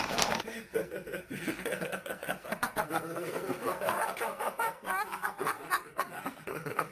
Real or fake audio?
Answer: fake